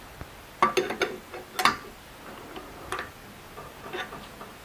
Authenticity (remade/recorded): recorded